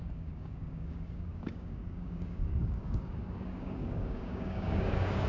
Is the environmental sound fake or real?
fake